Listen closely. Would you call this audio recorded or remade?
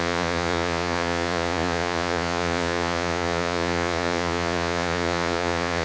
remade